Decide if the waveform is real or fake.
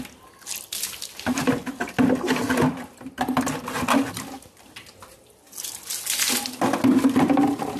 real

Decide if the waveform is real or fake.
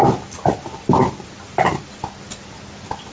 real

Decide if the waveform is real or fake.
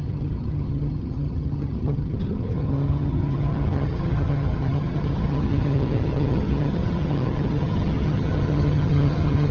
fake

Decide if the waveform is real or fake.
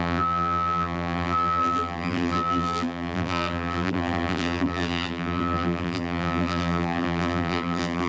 fake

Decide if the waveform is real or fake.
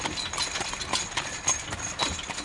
real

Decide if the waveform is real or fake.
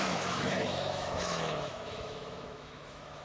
fake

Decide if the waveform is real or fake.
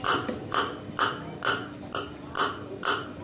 real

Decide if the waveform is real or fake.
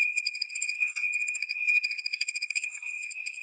fake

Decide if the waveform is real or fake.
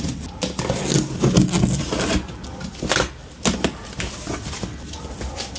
real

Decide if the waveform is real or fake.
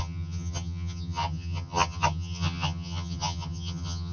fake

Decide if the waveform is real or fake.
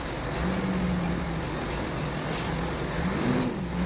real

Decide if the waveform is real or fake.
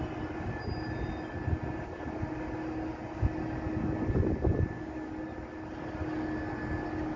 real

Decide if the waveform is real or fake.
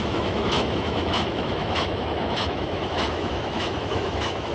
fake